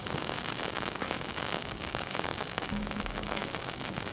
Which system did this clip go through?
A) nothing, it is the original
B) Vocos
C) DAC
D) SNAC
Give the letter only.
C